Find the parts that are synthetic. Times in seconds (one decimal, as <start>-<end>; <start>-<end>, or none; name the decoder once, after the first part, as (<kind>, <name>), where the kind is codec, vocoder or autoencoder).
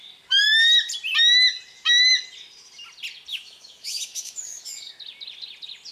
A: 3.3-4.9 (autoencoder, DAC-VAE)